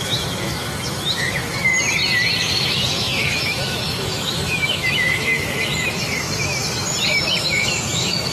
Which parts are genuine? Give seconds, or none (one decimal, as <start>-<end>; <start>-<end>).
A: 1.7-2.4; 6.6-7.4